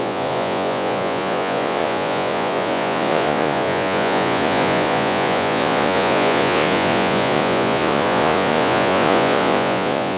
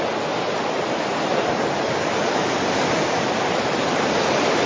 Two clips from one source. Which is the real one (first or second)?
second